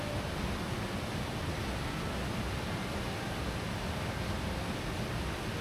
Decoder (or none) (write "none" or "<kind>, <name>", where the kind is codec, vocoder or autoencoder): none